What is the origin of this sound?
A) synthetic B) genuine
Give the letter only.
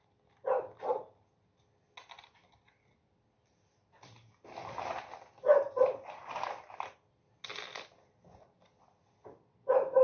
B